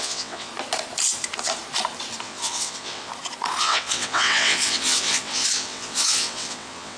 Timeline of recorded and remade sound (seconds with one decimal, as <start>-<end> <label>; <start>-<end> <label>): 0.0-0.5 remade; 0.5-2.2 recorded; 2.2-3.1 remade; 3.1-3.6 recorded; 3.6-7.0 remade